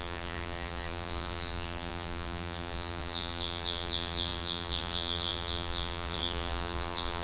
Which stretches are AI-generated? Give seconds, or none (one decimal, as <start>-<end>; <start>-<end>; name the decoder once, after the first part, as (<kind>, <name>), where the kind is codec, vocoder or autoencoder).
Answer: 0.0-7.2 (vocoder, BigVGAN v2)